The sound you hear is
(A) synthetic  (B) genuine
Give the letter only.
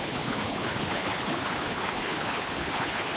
A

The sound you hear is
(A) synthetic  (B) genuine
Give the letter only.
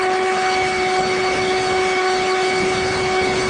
A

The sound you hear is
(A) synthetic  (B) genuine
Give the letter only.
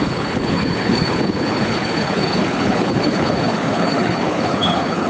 A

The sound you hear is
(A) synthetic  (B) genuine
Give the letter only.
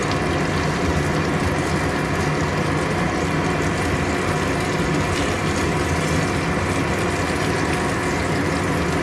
B